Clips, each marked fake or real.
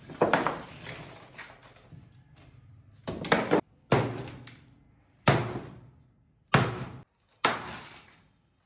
real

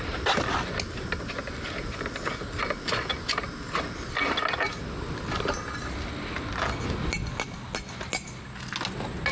real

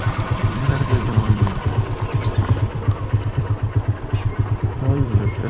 fake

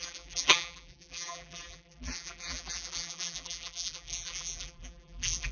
fake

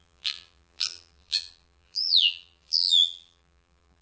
fake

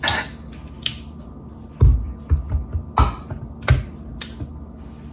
real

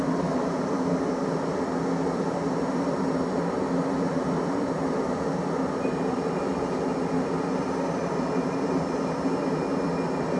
fake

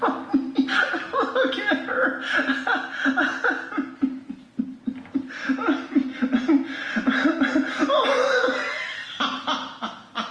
real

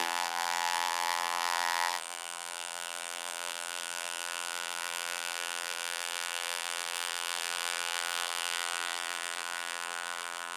fake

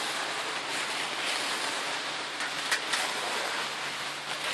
real